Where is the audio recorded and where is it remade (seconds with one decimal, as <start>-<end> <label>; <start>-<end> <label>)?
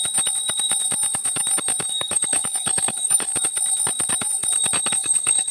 0.0-1.9 recorded; 1.9-3.3 remade; 3.3-4.9 recorded; 4.9-5.5 remade